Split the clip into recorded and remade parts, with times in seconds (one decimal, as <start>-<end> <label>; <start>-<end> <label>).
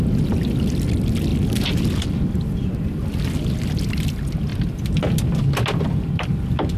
0.0-6.8 recorded